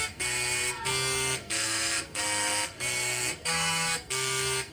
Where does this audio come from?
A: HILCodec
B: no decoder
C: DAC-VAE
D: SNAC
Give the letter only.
D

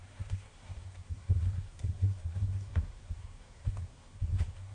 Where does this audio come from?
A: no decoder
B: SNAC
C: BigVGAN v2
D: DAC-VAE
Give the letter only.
B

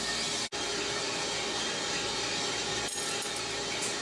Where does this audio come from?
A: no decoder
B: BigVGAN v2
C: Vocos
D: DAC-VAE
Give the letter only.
A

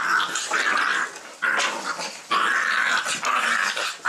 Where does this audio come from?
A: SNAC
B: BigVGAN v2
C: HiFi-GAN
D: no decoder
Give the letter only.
D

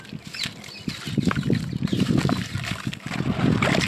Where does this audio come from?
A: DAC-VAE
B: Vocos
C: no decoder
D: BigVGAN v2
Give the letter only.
C